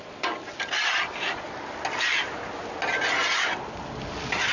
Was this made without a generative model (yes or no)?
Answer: yes